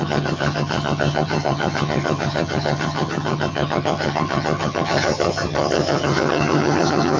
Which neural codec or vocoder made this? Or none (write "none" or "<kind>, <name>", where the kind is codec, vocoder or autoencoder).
vocoder, HiFi-GAN